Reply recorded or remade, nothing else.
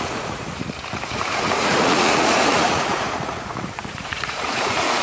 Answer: remade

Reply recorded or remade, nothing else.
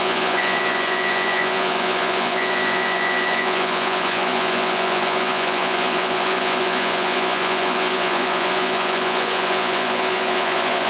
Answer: remade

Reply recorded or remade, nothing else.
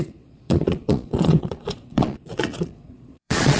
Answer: remade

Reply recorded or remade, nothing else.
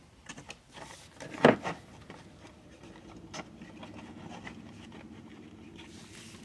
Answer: recorded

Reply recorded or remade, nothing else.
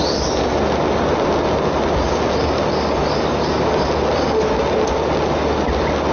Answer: recorded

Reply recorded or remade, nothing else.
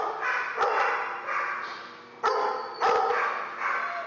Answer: recorded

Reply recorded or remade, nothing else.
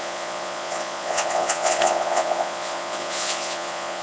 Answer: remade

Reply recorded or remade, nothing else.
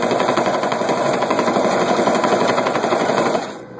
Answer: remade